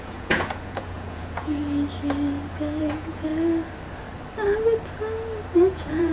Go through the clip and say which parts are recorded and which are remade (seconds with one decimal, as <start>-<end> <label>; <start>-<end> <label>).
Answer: 0.0-1.6 remade; 1.6-2.8 recorded; 2.8-3.3 remade; 3.3-5.5 recorded; 5.5-6.1 remade